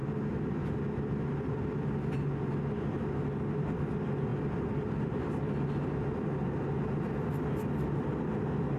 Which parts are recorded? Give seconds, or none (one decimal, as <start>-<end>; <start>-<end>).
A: 0.0-8.8